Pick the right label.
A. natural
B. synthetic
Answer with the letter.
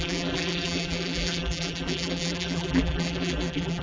B